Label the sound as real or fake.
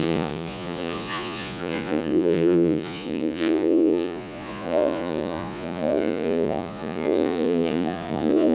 fake